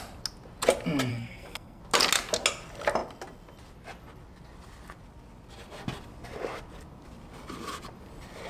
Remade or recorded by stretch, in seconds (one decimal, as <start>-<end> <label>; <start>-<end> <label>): 0.0-1.1 recorded; 1.1-1.8 remade; 1.8-8.5 recorded